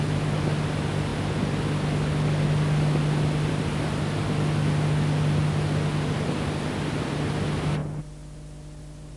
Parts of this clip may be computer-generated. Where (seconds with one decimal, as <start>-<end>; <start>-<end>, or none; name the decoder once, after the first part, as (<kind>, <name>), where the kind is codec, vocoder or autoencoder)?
none